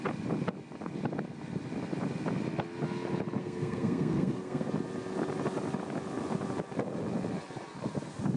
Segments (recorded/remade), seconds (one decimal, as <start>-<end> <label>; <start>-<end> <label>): 0.0-3.4 recorded; 3.4-4.7 remade; 4.7-8.4 recorded